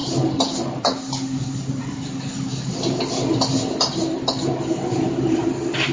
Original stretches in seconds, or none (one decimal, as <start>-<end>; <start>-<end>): 0.0-5.9